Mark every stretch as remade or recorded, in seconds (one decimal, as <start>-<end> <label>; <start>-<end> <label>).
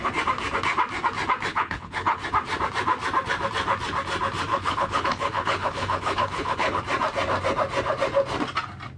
0.0-1.5 recorded; 1.5-2.2 remade; 2.2-4.5 recorded; 4.5-6.8 remade; 6.8-9.0 recorded